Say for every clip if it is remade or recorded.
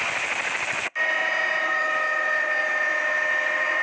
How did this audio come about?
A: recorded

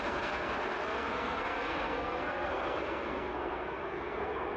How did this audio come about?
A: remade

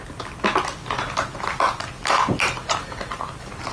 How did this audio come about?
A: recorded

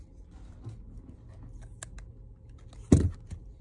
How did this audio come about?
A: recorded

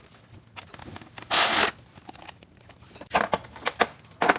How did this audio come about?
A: recorded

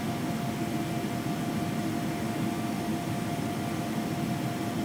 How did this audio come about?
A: recorded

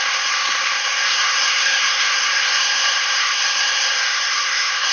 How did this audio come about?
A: remade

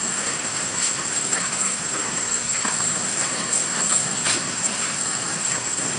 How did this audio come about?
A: remade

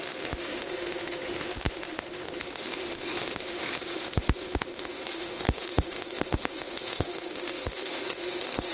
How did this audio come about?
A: remade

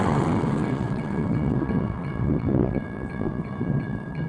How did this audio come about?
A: remade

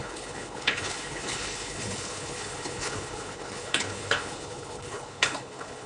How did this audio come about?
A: remade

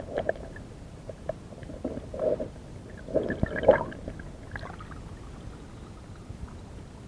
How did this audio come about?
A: recorded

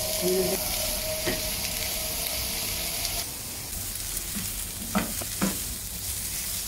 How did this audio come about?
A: recorded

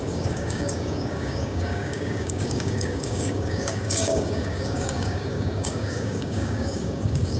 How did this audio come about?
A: remade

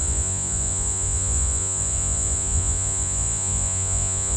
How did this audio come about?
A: remade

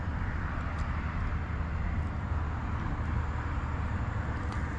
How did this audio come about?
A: recorded